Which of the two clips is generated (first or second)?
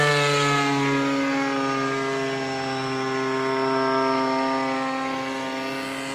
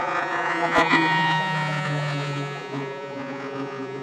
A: second